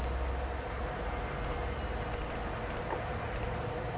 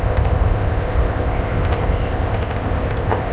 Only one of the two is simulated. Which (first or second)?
second